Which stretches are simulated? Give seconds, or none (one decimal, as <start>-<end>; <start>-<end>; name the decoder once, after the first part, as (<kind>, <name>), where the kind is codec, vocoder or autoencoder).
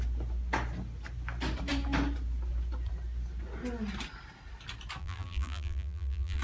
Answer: 5.0-6.4 (vocoder, BigVGAN v2)